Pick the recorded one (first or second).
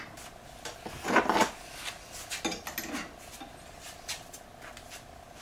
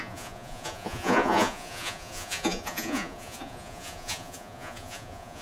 first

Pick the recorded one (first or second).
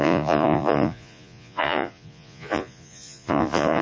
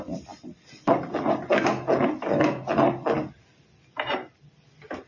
second